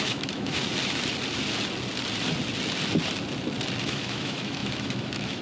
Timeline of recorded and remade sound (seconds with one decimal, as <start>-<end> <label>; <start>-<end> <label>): 0.0-0.6 remade; 0.6-3.8 recorded; 3.8-5.4 remade